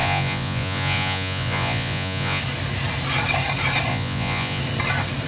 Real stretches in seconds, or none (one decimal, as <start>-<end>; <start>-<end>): 2.4-3.9; 4.6-5.3